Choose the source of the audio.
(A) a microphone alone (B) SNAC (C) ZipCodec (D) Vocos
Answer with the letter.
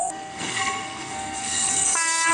B